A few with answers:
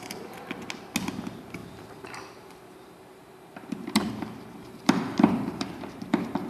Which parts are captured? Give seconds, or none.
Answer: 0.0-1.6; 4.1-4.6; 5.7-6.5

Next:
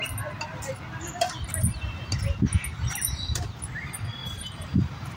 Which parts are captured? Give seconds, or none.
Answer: 0.0-4.2

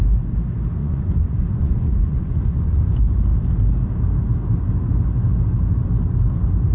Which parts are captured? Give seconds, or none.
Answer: 0.0-0.8; 2.8-6.7

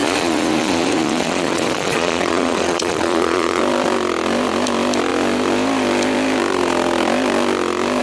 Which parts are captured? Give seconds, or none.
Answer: 3.6-8.0

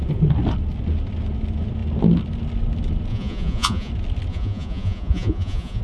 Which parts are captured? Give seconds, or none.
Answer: 0.0-3.1; 3.9-4.3

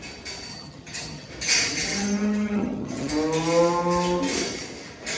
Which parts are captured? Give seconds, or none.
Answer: 0.0-0.5; 1.3-1.9; 3.1-5.2

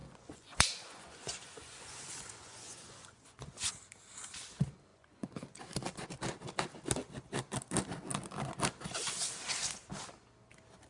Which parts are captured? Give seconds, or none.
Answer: 3.7-4.9; 5.6-10.9